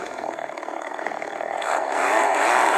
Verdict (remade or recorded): remade